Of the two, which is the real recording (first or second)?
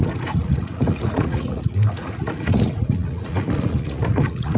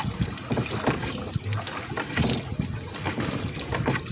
second